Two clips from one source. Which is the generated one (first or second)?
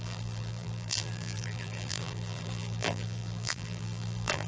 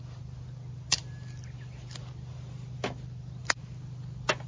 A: first